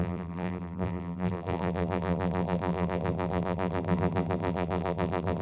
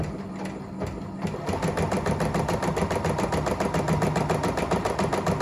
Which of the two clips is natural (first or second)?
second